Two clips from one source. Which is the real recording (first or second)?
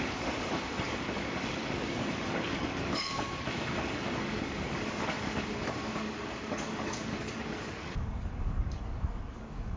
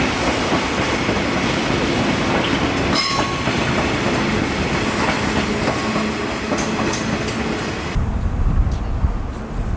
second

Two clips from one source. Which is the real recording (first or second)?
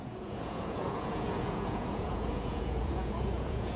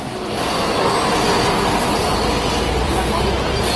second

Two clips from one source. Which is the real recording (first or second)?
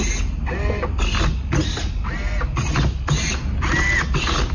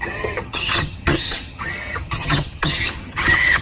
first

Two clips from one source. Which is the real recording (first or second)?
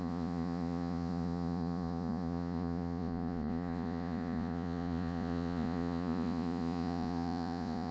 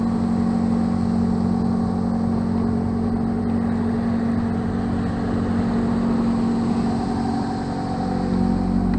second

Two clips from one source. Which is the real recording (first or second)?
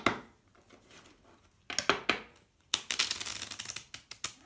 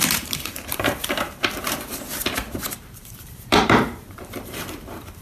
first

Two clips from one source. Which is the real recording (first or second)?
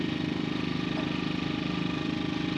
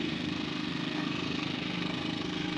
first